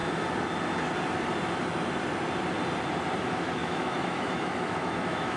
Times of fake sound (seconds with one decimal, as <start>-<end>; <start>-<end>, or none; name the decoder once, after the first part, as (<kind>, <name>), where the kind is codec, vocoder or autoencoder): 3.2-5.4 (autoencoder, DAC-VAE)